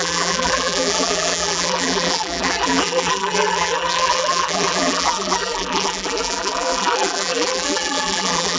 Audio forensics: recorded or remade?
remade